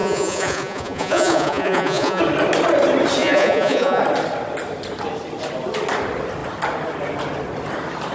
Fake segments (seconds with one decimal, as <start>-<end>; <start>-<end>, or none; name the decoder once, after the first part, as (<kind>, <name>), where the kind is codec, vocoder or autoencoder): 0.0-2.2 (vocoder, Vocos); 3.2-4.0